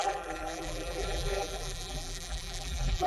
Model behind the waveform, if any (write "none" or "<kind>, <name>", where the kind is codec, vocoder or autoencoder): vocoder, BigVGAN v2